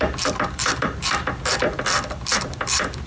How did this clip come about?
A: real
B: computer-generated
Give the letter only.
B